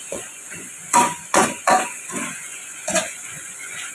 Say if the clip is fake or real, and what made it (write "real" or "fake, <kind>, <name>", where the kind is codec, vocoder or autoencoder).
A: fake, vocoder, Vocos